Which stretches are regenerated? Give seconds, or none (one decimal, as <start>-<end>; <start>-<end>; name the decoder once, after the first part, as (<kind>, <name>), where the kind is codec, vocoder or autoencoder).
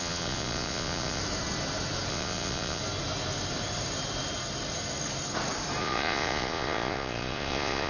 0.0-1.2 (vocoder, Vocos); 2.1-2.8; 5.8-7.9